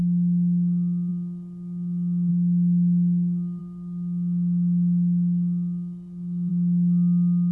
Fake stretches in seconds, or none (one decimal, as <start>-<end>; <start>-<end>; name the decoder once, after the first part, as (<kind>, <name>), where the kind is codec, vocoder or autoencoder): none